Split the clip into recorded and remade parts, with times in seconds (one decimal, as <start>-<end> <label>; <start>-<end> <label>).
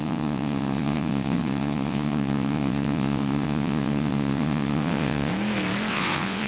0.0-5.3 remade; 5.3-5.9 recorded; 5.9-6.5 remade